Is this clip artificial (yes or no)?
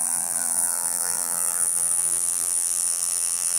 yes